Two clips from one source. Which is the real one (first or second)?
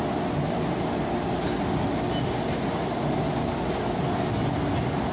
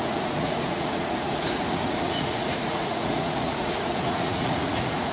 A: first